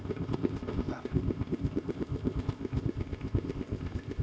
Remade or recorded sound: remade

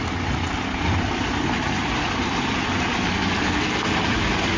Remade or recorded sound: recorded